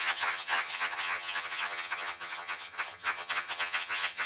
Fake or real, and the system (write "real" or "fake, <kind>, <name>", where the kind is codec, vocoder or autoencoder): fake, vocoder, HiFi-GAN